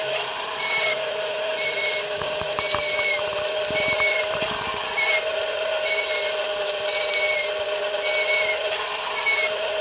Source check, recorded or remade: remade